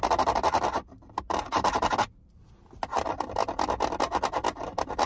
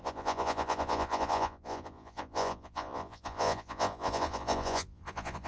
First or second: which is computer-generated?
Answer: second